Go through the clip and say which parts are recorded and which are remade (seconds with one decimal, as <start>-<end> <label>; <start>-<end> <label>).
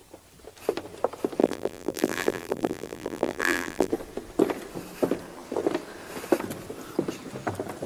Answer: 0.0-1.4 recorded; 1.4-3.9 remade; 3.9-7.9 recorded